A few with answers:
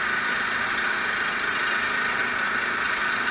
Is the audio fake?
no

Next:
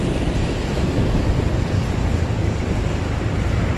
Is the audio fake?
no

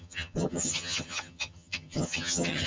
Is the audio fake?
yes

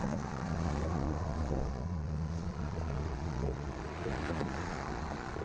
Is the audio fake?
yes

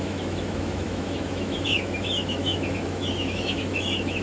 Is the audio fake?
yes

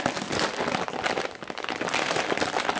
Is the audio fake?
no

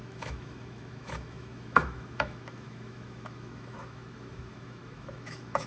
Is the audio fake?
yes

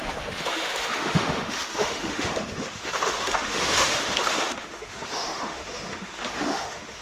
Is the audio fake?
yes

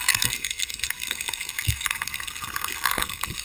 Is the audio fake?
yes